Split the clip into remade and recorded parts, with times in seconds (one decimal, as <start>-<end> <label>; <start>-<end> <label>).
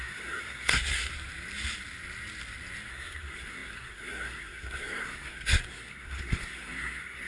0.0-1.1 remade; 1.1-2.9 recorded; 2.9-7.3 remade